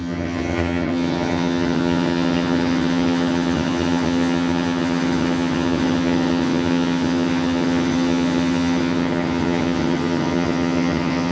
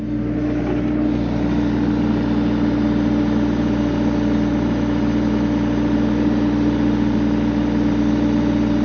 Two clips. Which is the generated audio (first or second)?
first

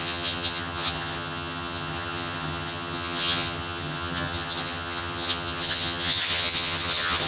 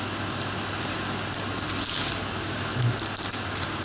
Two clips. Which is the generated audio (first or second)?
first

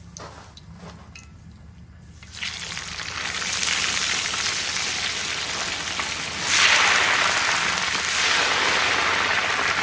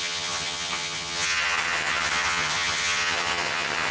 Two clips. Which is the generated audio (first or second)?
second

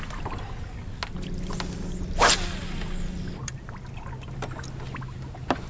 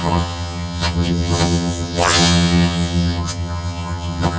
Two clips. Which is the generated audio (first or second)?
second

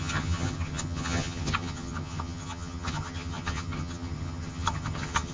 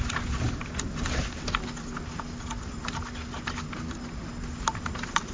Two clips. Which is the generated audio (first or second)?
first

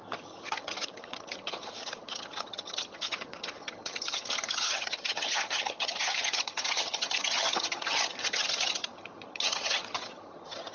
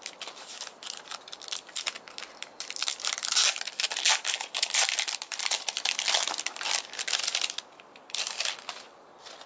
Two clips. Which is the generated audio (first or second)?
first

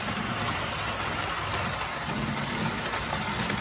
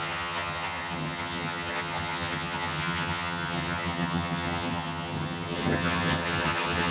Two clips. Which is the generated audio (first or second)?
second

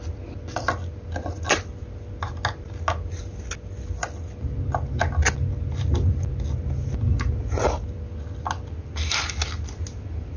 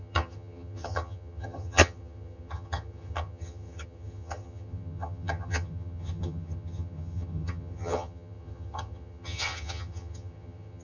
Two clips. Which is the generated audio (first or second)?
second